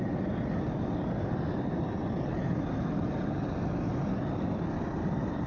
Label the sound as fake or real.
real